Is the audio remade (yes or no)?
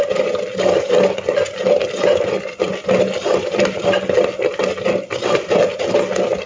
no